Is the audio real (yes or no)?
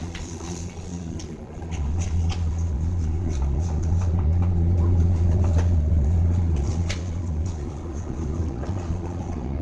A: no